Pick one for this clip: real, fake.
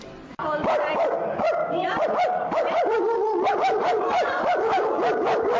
real